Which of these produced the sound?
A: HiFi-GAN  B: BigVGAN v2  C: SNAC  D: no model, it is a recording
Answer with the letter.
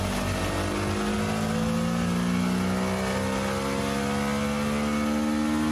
D